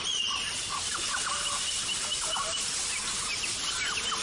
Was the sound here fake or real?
real